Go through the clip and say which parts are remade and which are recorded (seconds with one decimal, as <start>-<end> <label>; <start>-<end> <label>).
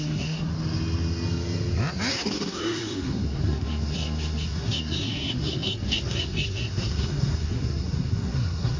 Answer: 0.0-0.5 remade; 0.5-2.1 recorded; 2.1-8.8 remade